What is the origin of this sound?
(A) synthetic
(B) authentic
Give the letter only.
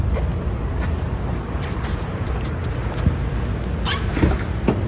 B